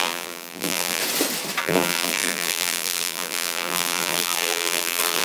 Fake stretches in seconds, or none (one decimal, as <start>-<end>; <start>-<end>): 0.0-1.0; 1.6-5.2